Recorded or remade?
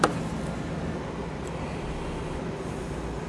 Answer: recorded